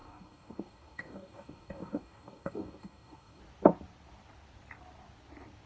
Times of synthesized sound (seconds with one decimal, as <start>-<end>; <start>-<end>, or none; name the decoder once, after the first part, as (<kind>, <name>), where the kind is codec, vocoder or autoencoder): 0.0-3.4 (codec, DAC)